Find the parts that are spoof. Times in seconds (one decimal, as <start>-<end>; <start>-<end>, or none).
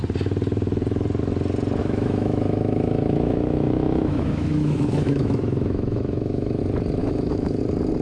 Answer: 1.8-6.6; 7.0-7.6